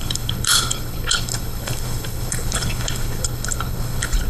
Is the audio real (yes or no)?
no